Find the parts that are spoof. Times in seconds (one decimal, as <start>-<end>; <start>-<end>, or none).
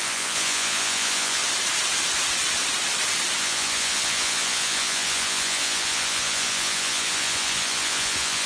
0.0-1.4; 3.4-8.5